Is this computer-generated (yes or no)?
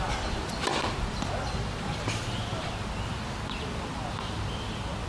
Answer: no